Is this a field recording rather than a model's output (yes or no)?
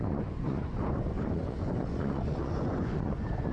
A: no